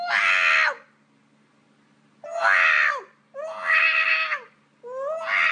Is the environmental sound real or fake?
real